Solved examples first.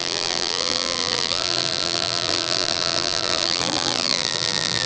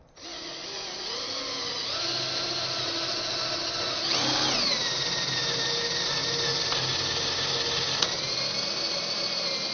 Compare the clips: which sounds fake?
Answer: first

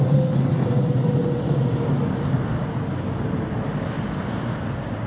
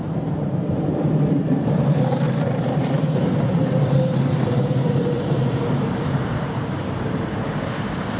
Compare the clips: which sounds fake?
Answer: second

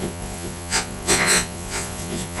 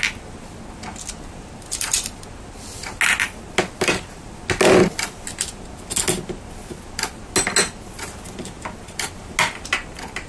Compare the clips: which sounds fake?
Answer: first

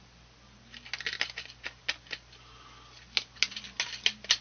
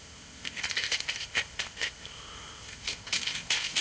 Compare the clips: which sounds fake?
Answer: second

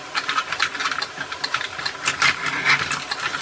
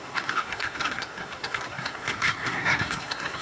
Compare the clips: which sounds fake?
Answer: second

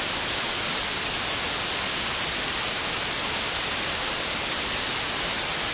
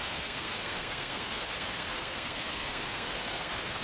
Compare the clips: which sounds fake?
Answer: second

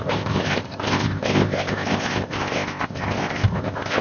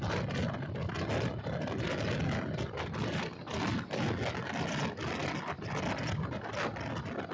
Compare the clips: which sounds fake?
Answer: first